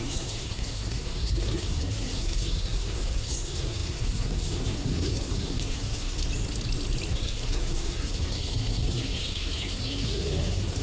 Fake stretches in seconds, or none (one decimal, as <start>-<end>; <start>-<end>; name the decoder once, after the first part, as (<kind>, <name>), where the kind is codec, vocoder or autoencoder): 0.0-6.2 (codec, SNAC); 7.1-10.8